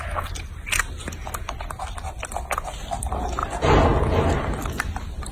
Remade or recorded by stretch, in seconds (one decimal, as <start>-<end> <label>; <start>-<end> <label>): 0.0-1.0 recorded; 1.0-1.8 remade; 1.8-5.3 recorded